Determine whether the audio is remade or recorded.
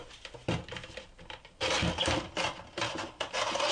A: remade